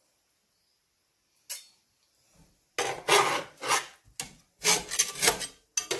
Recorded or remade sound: recorded